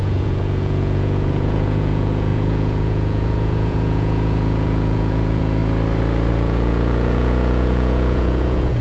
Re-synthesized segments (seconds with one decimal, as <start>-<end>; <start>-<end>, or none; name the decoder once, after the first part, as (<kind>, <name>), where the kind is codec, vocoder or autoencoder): 0.0-5.6 (vocoder, Vocos); 6.3-8.8